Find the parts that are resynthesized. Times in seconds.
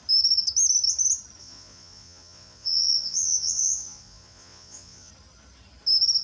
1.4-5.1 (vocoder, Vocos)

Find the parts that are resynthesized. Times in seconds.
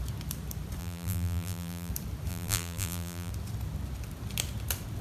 0.8-1.9 (vocoder, BigVGAN v2); 2.3-3.3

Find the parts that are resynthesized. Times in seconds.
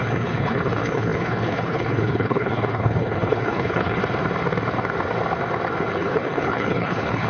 0.0-4.0 (codec, HILCodec); 5.9-7.3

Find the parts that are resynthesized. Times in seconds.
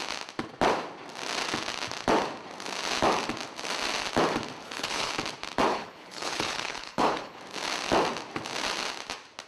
4.6-5.1 (codec, HILCodec); 5.7-7.4